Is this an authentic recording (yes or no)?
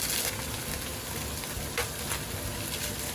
yes